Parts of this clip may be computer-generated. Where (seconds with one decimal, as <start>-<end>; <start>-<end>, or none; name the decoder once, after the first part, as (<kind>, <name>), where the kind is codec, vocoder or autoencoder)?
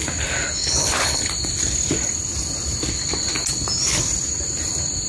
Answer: 0.6-1.3 (codec, HILCodec)